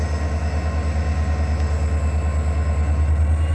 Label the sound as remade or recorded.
recorded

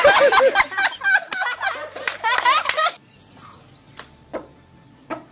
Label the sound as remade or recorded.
recorded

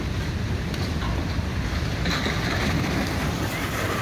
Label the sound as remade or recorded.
recorded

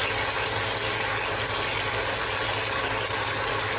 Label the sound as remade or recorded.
recorded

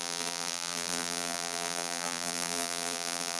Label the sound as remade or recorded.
remade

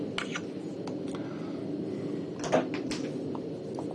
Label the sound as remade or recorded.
recorded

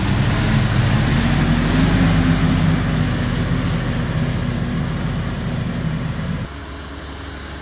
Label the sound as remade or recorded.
recorded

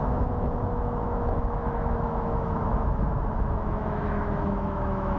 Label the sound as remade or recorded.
remade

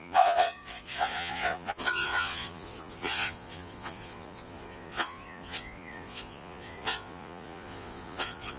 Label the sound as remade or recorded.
remade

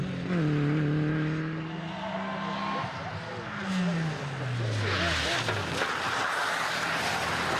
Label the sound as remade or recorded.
recorded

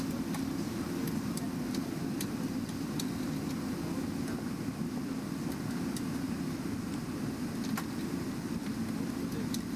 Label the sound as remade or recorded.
recorded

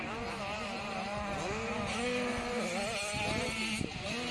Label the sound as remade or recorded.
recorded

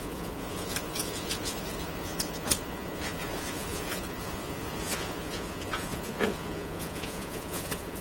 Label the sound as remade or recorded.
remade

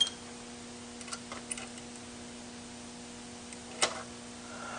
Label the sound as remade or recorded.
recorded